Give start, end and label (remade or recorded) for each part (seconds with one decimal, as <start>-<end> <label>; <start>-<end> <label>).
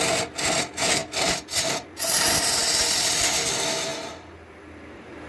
0.0-5.3 recorded